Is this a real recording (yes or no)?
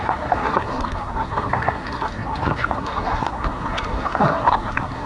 no